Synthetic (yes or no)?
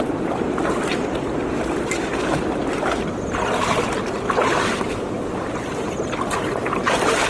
no